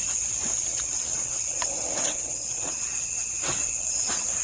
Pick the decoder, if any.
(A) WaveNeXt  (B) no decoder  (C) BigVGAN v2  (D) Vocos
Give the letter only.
A